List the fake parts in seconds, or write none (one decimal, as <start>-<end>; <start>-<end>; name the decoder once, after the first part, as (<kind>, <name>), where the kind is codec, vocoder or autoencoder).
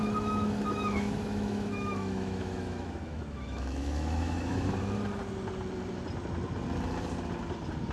0.0-4.7 (autoencoder, DAC-VAE)